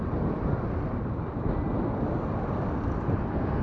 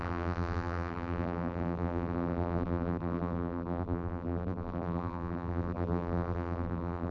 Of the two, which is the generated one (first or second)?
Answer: second